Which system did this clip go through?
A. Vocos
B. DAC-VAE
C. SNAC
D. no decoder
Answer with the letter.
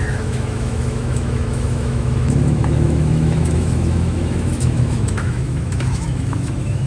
B